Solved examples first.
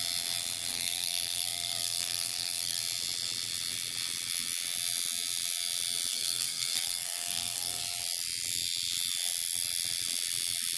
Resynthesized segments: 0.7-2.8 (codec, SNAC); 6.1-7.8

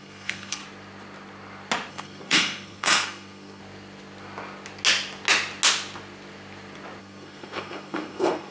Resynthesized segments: 0.0-0.6 (codec, SNAC); 1.9-3.6; 7.0-8.5